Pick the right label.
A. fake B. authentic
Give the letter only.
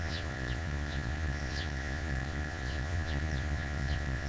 A